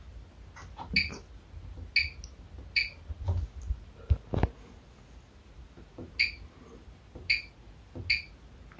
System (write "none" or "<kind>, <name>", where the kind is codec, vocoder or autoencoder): none